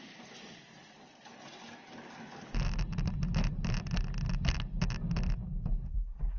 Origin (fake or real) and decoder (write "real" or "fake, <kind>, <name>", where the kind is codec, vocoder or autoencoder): real